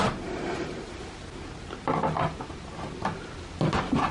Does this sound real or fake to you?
real